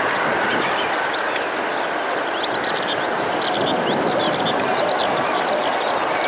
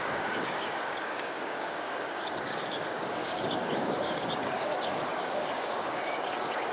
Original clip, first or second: first